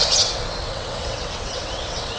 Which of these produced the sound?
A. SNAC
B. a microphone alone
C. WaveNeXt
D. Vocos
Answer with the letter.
C